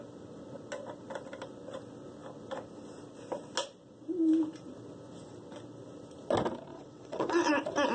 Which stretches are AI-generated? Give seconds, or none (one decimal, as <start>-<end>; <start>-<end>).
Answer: 6.7-7.5

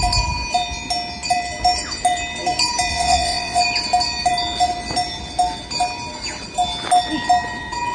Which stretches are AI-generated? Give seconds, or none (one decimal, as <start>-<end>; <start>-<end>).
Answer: 2.9-3.6

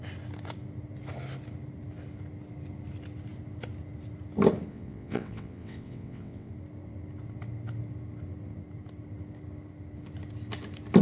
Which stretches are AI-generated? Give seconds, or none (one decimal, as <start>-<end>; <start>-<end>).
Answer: 4.7-6.5